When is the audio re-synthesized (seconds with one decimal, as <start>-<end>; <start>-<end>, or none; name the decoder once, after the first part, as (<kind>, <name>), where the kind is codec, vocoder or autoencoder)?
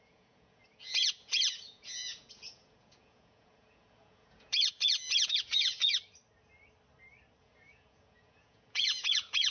0.0-5.9 (vocoder, Vocos); 7.4-9.5